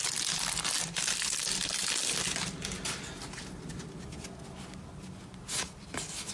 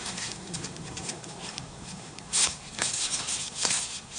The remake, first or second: second